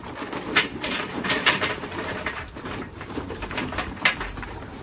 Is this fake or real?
fake